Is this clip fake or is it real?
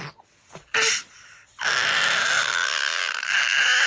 real